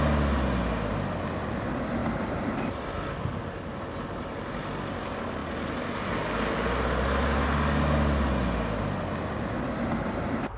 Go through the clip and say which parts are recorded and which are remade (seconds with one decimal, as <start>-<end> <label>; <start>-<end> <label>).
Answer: 0.0-2.0 recorded; 2.0-2.8 remade; 2.8-10.6 recorded